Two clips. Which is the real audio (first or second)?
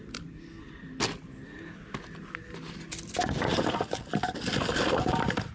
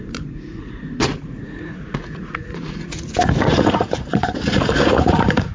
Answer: first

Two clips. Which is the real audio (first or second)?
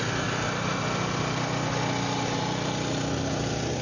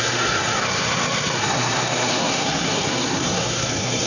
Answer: first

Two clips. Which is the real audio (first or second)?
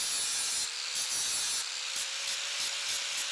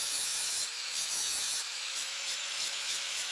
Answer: first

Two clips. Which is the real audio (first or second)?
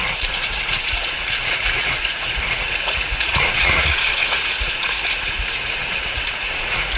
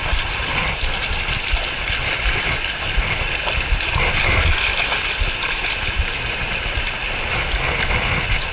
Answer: second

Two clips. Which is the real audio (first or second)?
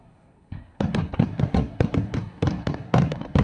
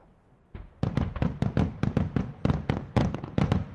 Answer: second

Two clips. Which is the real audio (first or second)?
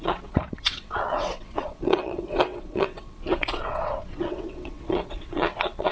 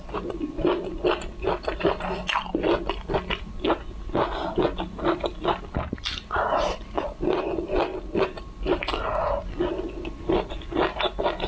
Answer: second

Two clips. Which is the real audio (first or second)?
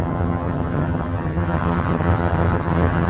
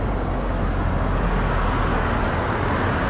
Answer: second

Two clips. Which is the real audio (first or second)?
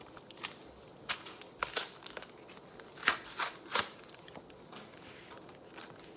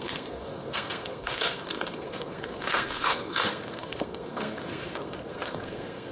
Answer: first